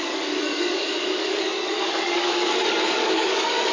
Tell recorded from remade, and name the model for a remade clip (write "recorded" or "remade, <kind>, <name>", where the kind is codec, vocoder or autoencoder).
remade, codec, DAC